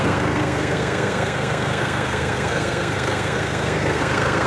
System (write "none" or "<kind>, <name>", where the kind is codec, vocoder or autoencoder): codec, SNAC